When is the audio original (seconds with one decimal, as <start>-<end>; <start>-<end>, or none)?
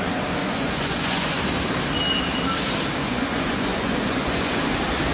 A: 0.0-0.4; 1.4-3.0; 4.6-5.1